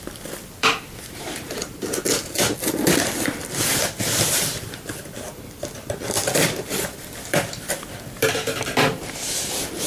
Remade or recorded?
remade